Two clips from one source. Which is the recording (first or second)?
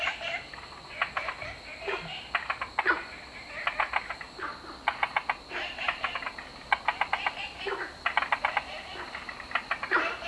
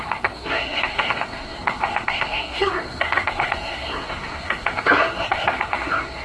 first